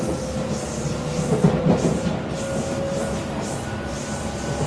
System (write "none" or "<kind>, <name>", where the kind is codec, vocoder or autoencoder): none